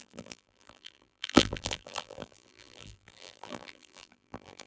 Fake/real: fake